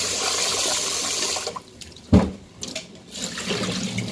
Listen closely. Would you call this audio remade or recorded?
recorded